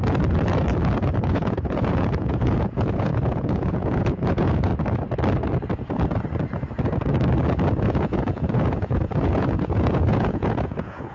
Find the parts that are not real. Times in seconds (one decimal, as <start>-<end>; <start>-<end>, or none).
1.0-4.7; 7.8-11.1